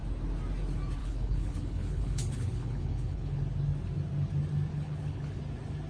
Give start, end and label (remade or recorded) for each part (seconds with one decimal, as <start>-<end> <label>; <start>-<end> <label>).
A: 0.0-1.0 recorded; 1.0-3.4 remade; 3.4-4.7 recorded; 4.7-5.4 remade; 5.4-5.9 recorded